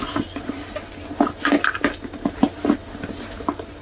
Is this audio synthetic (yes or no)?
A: no